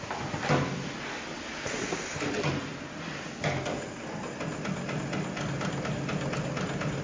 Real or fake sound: real